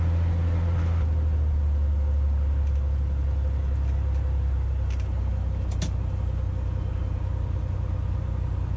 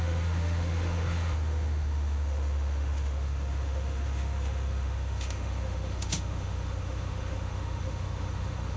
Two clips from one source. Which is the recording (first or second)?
first